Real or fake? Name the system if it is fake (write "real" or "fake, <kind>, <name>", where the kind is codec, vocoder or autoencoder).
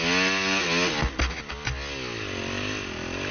real